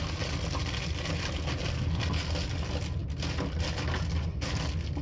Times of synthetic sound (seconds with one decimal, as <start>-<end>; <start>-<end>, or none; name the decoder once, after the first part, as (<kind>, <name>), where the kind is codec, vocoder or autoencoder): none